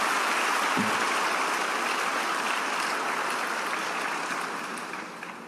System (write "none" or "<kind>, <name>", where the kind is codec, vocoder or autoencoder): none